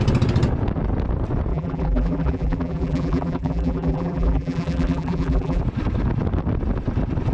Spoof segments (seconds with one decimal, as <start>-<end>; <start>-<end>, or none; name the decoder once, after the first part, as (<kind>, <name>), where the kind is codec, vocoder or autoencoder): 1.5-5.6 (vocoder, BigVGAN v2)